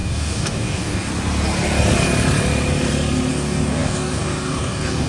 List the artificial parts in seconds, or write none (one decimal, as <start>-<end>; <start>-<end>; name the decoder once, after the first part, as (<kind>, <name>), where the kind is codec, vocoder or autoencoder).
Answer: 0.0-1.1 (codec, DAC); 3.3-5.1